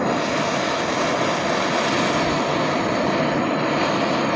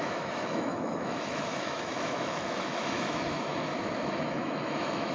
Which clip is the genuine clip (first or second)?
first